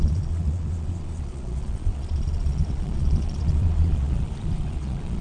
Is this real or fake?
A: fake